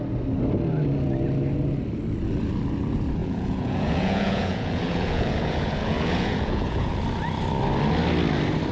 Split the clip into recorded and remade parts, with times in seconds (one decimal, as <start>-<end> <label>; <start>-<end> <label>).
0.0-3.2 recorded; 3.2-6.9 remade; 6.9-8.7 recorded

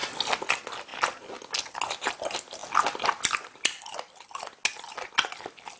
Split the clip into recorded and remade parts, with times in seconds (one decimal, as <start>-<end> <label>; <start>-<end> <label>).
0.0-5.8 recorded

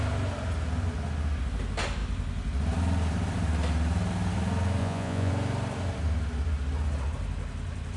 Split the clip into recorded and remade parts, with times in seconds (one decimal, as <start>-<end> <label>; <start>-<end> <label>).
0.0-4.8 recorded; 4.8-5.3 remade; 5.3-8.0 recorded

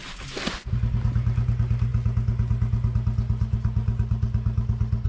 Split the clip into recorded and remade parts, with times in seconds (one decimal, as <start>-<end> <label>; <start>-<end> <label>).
0.0-5.1 recorded